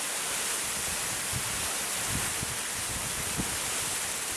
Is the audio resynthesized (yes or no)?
no